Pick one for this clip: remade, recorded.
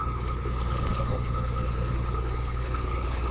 remade